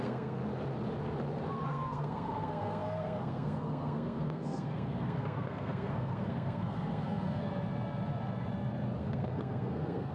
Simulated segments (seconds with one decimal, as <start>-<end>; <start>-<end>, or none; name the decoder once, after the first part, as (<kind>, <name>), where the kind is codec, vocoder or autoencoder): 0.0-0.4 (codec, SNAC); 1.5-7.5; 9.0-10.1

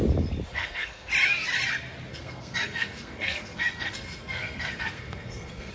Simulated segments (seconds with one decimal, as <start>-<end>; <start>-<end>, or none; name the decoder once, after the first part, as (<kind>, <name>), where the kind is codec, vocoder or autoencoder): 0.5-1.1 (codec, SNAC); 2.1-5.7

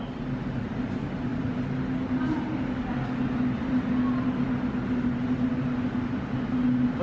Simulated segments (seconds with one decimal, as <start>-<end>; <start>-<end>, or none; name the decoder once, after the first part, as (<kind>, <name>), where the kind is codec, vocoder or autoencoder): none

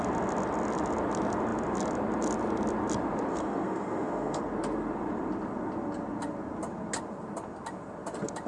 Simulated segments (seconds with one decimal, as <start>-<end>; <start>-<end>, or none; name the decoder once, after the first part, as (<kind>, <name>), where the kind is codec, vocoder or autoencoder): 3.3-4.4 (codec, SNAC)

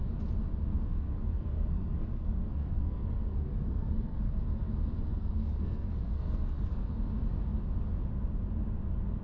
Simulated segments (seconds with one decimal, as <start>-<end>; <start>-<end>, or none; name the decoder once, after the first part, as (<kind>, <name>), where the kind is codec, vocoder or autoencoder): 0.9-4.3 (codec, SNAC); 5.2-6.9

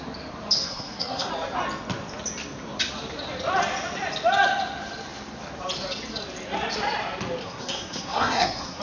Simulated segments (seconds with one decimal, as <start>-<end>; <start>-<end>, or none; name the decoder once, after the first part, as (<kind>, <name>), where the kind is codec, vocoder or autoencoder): 0.6-1.3 (codec, SNAC); 7.4-8.8